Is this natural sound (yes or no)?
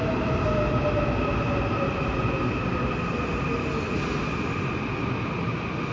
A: yes